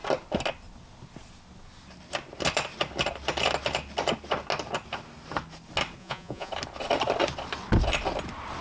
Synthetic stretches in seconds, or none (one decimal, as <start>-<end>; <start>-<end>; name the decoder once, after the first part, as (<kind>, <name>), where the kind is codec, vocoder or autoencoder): 6.0-6.5 (vocoder, Vocos)